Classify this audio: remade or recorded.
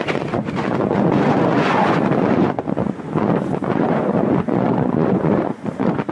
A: remade